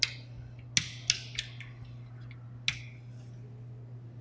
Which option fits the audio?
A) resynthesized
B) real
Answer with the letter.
B